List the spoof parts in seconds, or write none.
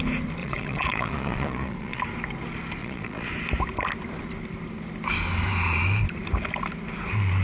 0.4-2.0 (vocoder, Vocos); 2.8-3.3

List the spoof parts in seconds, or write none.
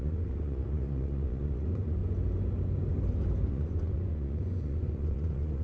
0.0-2.0 (vocoder, Vocos); 3.5-5.6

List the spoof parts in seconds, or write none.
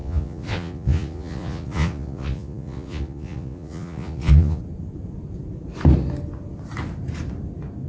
0.0-4.6 (vocoder, Vocos)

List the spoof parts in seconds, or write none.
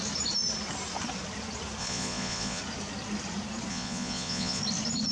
1.8-2.6 (vocoder, Vocos); 3.7-4.6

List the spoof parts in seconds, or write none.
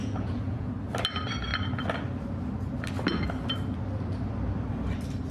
0.0-0.7 (vocoder, Vocos)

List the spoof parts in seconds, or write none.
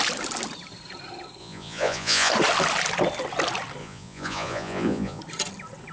1.4-2.3 (vocoder, Vocos); 3.8-5.2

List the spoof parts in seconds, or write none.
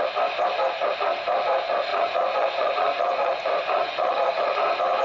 1.9-4.3 (vocoder, Vocos)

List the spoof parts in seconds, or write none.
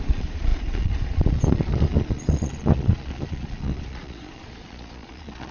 0.0-5.5 (vocoder, Vocos)